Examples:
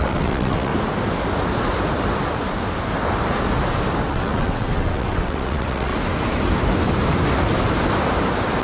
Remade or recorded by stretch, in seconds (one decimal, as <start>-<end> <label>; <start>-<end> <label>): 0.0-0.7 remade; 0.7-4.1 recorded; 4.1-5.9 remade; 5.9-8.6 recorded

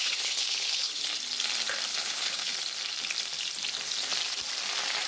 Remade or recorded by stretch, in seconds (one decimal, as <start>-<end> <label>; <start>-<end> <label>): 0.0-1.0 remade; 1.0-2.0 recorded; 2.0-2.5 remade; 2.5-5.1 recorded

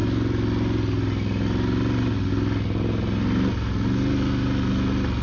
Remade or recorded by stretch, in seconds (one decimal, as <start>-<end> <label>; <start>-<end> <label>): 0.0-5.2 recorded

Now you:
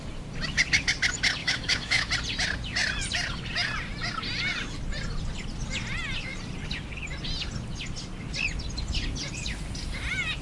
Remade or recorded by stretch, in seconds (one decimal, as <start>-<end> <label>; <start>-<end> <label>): 0.0-1.4 recorded; 1.4-2.1 remade; 2.1-10.4 recorded

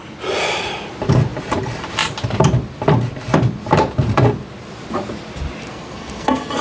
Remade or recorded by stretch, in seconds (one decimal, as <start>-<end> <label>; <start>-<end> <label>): 0.0-5.7 recorded; 5.7-6.6 remade

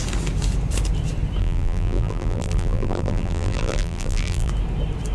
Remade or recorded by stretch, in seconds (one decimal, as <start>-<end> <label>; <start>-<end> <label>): 0.0-1.4 recorded; 1.4-4.5 remade; 4.5-5.1 recorded